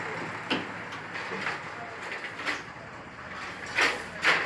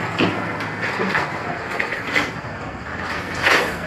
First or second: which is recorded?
first